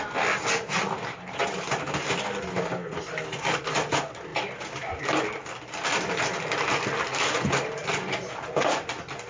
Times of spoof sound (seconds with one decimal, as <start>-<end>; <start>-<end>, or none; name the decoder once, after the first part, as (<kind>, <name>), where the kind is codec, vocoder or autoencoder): 4.3-5.0 (vocoder, BigVGAN v2); 7.1-8.8